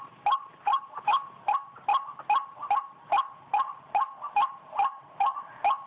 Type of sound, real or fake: real